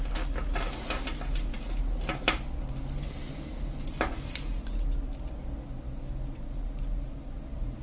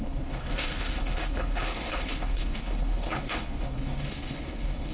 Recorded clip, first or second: first